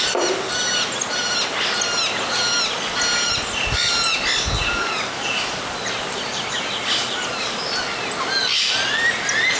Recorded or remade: recorded